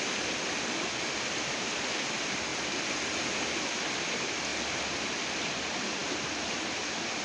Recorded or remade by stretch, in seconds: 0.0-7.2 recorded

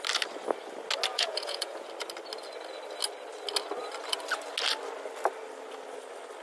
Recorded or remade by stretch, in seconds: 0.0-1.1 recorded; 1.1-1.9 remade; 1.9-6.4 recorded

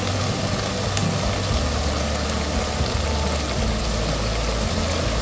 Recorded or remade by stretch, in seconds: 0.0-5.2 recorded

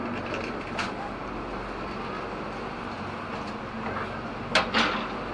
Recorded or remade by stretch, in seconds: 0.0-5.3 recorded

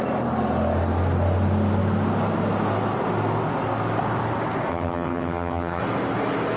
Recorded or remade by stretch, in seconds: 0.0-4.7 recorded; 4.7-5.8 remade; 5.8-6.6 recorded

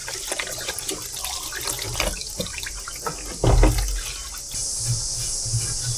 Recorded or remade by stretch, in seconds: 0.0-1.5 remade; 1.5-6.0 recorded

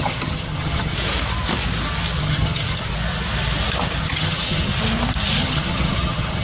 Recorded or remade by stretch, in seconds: 0.0-0.9 remade; 0.9-2.2 recorded; 2.2-2.9 remade; 2.9-4.0 recorded; 4.0-4.7 remade; 4.7-5.4 recorded; 5.4-6.4 remade